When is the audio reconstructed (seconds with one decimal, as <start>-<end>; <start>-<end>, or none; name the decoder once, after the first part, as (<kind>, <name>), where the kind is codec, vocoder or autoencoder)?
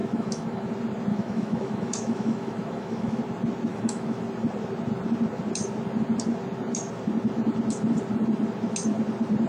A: 0.0-0.7 (autoencoder, DAC-VAE); 1.1-3.2; 3.7-4.2